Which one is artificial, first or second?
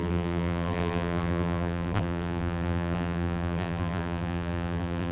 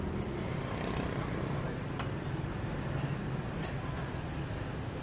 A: first